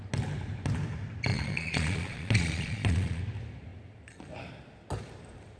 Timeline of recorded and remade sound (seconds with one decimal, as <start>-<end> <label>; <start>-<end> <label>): 0.0-1.3 recorded; 1.3-3.2 remade; 3.2-5.6 recorded